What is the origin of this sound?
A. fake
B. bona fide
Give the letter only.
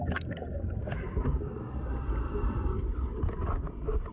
B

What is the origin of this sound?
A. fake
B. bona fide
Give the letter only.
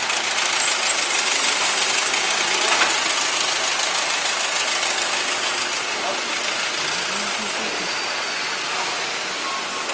B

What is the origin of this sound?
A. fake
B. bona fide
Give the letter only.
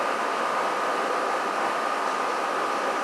B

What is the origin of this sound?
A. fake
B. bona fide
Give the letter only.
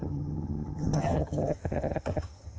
A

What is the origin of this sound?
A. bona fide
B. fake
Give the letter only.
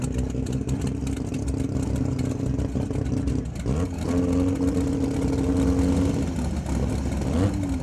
A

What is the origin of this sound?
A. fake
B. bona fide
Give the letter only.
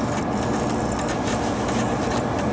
B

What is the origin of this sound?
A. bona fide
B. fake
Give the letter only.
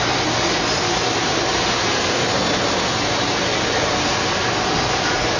A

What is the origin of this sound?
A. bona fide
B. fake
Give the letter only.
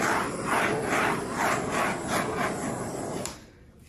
A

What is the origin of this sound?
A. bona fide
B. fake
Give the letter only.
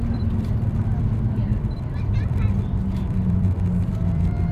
B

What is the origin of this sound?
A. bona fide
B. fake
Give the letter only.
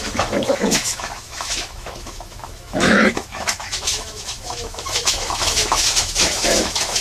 B